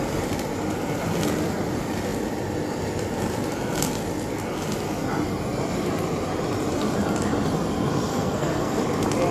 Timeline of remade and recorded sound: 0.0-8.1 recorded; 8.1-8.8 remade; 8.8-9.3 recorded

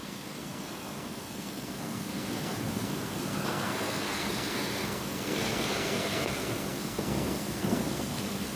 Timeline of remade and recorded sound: 0.0-8.6 remade

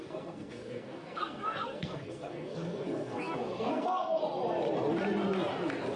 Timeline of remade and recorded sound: 0.0-4.2 remade; 4.2-6.0 recorded

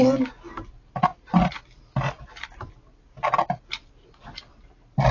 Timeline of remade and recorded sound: 0.0-5.1 recorded

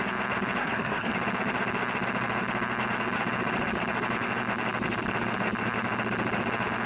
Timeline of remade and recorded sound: 0.0-0.6 recorded; 0.6-1.1 remade; 1.1-6.9 recorded

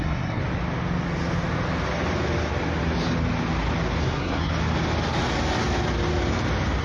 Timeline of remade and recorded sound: 0.0-0.4 remade; 0.4-4.0 recorded; 4.0-4.5 remade; 4.5-6.8 recorded

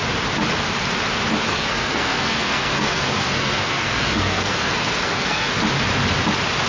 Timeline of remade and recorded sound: 0.0-1.5 recorded; 1.5-5.5 remade; 5.5-6.7 recorded

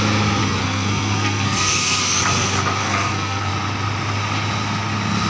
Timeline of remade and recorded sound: 0.0-0.4 recorded; 0.4-2.2 remade; 2.2-2.8 recorded; 2.8-3.5 remade; 3.5-5.3 recorded